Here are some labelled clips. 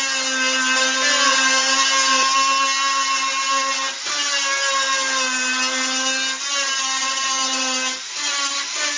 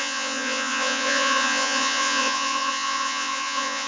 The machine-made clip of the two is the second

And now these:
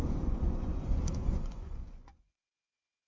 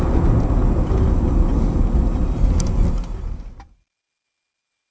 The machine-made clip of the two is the first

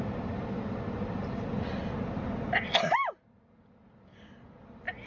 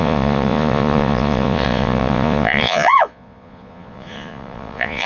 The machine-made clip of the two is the second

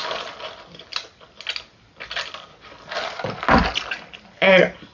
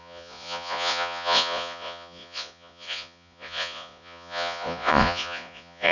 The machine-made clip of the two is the second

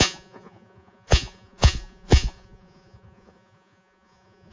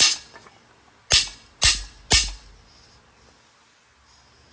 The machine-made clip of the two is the first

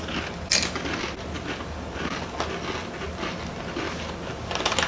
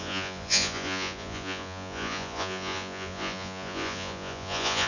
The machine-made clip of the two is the second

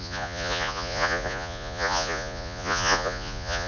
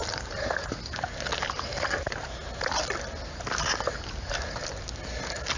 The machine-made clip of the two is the first